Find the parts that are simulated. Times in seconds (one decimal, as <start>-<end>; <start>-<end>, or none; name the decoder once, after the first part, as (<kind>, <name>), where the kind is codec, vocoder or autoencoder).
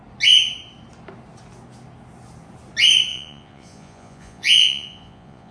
3.1-5.5 (vocoder, Vocos)